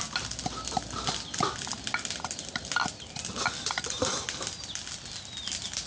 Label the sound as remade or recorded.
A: recorded